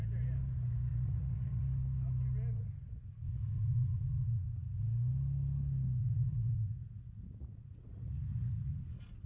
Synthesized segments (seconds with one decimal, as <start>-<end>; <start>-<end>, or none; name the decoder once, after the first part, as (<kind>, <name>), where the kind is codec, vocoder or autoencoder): 0.9-1.6 (vocoder, Vocos); 3.3-4.8; 6.0-8.7